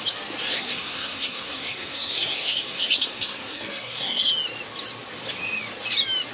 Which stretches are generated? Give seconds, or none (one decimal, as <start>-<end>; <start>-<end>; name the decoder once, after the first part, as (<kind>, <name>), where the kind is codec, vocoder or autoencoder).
0.5-4.3 (codec, SNAC)